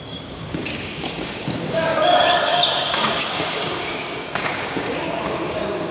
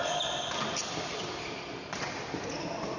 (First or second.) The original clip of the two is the second